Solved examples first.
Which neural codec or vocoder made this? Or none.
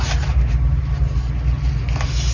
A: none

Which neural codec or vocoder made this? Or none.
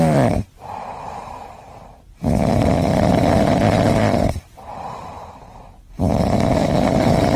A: vocoder, BigVGAN v2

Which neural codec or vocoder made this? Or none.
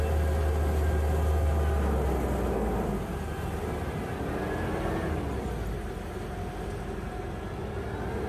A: none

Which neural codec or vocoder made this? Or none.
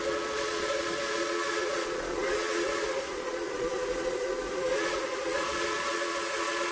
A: vocoder, Vocos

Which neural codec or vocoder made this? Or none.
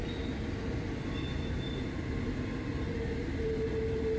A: none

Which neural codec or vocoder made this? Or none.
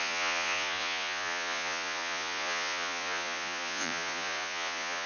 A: vocoder, Vocos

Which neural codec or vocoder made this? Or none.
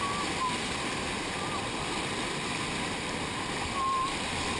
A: none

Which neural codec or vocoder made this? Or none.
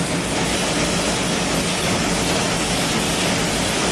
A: none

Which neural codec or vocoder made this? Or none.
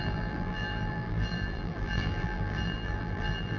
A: vocoder, BigVGAN v2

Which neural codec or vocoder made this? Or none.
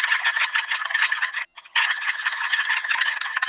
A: vocoder, HiFi-GAN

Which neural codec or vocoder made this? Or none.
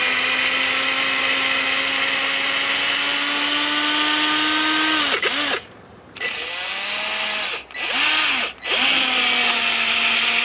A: none